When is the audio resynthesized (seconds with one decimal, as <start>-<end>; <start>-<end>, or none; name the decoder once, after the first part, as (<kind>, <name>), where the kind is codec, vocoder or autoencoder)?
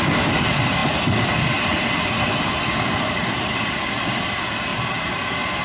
0.0-5.6 (vocoder, BigVGAN v2)